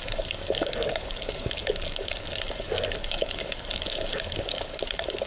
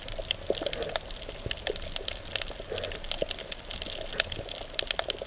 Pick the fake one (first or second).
first